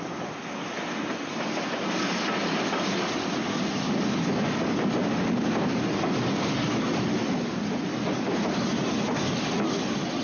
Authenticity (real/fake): real